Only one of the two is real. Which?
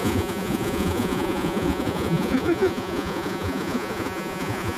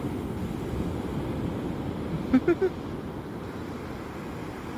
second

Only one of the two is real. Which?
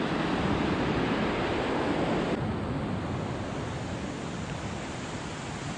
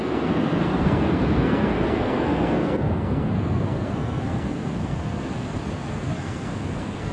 first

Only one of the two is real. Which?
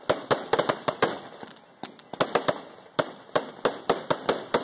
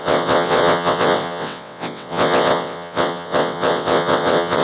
first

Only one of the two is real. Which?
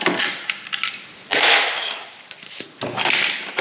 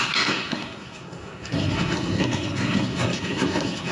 first